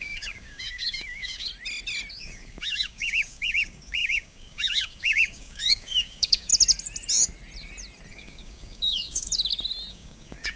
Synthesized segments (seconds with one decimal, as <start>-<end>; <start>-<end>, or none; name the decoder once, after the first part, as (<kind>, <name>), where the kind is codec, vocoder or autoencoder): 0.0-1.5 (codec, DAC); 2.2-6.5; 8.1-9.3; 9.9-10.6